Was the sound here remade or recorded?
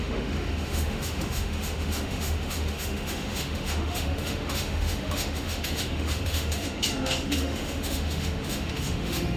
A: remade